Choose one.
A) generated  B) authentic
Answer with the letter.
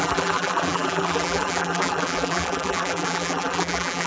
A